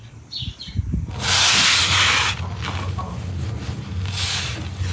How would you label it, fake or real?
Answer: real